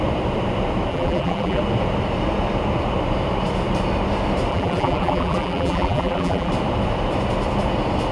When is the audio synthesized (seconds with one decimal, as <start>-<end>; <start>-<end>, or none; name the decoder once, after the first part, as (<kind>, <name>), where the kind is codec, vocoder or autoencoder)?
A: 0.9-1.6 (vocoder, BigVGAN v2); 4.5-6.5